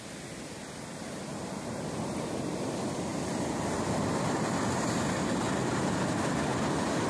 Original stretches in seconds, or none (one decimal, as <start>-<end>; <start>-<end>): 0.0-7.1